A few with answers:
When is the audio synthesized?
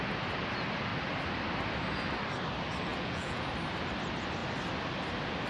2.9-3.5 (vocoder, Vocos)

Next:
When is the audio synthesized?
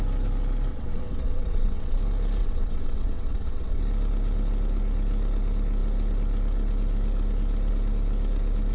0.7-2.0 (vocoder, WaveNeXt); 2.4-3.8